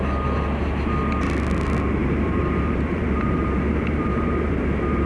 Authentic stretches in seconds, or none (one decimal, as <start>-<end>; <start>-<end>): 0.0-2.0